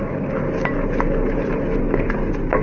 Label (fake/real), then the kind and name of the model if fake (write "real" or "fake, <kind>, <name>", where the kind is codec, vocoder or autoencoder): real